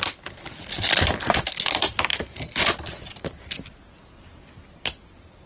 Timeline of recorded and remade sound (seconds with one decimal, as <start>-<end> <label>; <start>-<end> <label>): 0.0-5.5 recorded